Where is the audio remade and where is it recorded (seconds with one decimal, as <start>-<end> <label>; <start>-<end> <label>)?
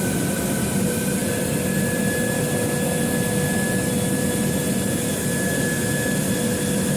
0.0-7.0 recorded